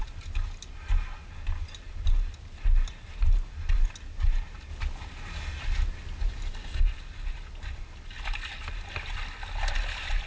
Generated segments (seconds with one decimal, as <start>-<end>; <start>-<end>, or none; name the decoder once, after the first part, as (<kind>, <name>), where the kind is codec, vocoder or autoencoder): none